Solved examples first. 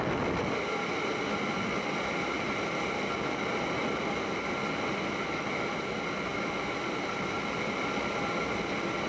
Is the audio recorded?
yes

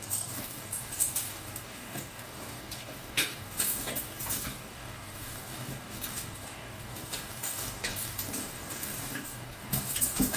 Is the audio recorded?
no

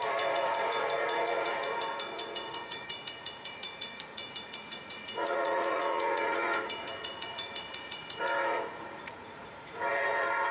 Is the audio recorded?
no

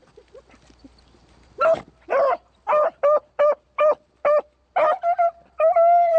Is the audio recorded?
yes